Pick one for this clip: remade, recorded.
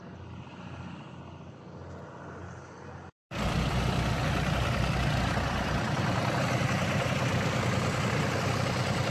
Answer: recorded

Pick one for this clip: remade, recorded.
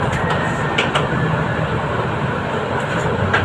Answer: remade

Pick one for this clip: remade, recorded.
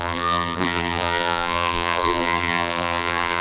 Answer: remade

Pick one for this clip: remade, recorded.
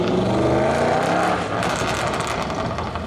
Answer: recorded